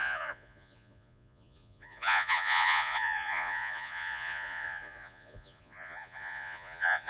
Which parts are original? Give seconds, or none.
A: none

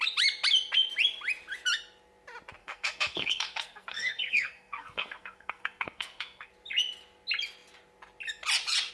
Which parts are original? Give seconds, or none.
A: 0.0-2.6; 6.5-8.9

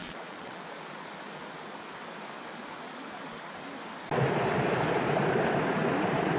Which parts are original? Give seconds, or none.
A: 0.6-6.4

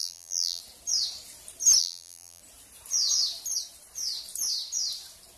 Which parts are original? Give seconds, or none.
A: 0.6-1.8; 2.4-5.4

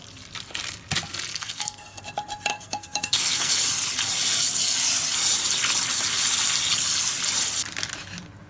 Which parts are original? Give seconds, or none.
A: 0.0-1.3; 2.0-2.5; 3.5-8.5

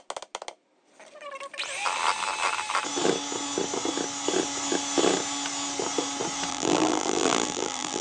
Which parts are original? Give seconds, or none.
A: 0.0-6.5

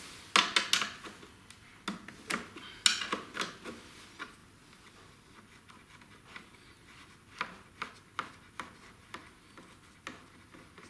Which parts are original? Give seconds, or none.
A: 0.0-10.9

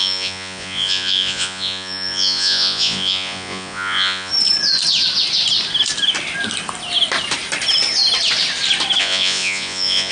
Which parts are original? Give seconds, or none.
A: 4.3-9.0